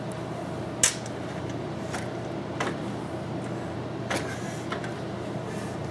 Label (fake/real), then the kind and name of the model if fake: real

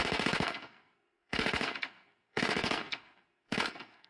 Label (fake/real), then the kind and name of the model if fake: fake, codec, SNAC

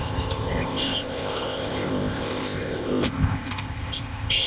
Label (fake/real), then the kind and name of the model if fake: fake, codec, ZipCodec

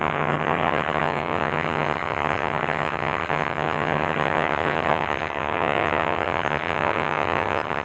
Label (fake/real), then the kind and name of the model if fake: fake, vocoder, HiFi-GAN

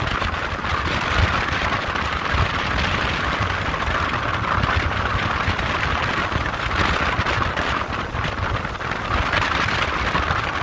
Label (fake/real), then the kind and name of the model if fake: real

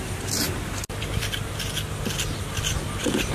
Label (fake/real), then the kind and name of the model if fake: real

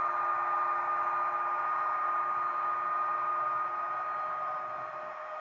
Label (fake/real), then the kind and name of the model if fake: real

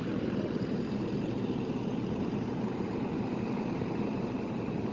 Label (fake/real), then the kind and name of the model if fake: fake, vocoder, BigVGAN v2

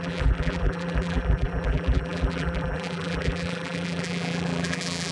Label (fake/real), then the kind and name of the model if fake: fake, vocoder, BigVGAN v2